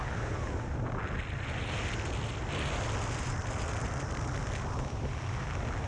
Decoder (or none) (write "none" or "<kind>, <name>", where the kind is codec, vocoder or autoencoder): none